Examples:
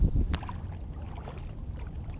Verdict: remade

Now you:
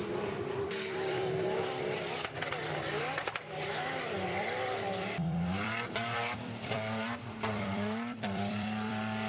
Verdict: remade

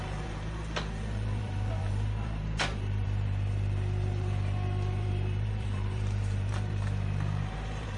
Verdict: remade